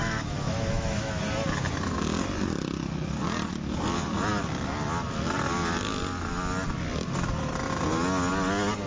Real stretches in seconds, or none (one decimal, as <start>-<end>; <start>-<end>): 1.2-8.9